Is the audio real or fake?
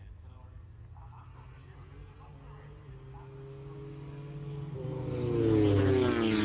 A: real